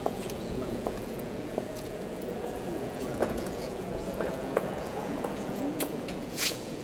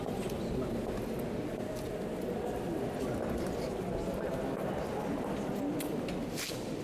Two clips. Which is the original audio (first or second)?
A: second